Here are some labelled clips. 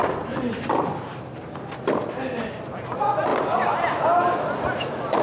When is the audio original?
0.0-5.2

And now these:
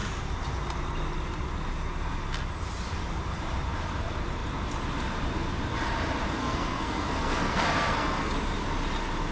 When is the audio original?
0.0-6.4; 8.3-9.3